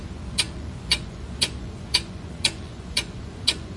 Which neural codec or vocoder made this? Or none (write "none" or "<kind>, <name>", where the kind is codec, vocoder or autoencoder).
vocoder, Vocos